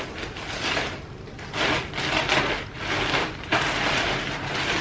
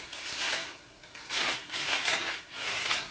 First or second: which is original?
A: first